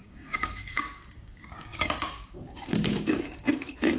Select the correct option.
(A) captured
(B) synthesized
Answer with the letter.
B